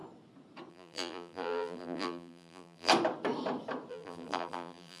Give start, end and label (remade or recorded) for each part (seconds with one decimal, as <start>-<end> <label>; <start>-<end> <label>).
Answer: 0.0-0.7 recorded; 0.7-2.9 remade; 2.9-3.9 recorded; 3.9-5.0 remade